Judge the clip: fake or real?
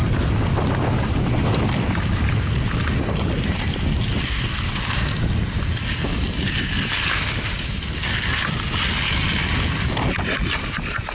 real